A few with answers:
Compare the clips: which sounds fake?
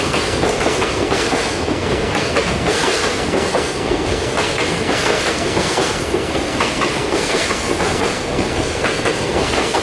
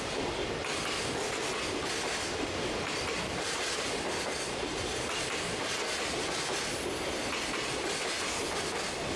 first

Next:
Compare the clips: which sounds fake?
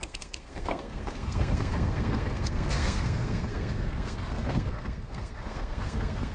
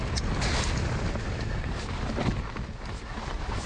first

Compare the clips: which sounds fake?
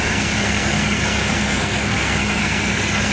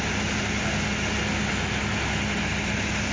first